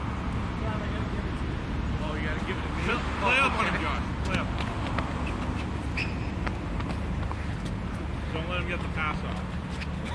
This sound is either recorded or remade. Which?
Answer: recorded